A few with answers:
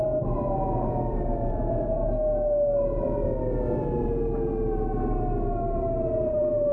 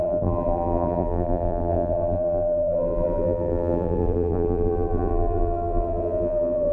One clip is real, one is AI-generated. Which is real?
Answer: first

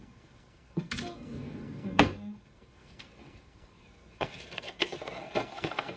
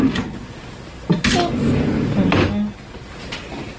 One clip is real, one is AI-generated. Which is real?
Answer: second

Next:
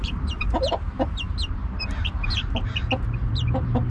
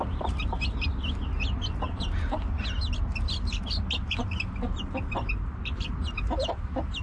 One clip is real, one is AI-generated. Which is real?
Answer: second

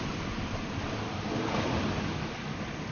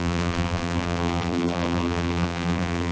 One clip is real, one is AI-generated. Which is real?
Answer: first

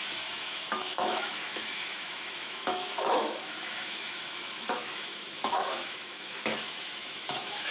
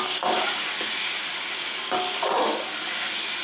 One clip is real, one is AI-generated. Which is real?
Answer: second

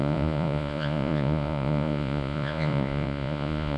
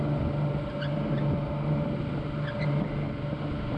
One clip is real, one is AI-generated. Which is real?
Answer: second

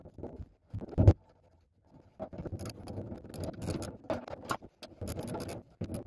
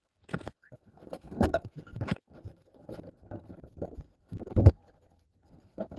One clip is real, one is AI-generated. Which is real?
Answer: first